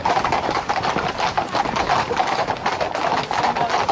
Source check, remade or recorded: recorded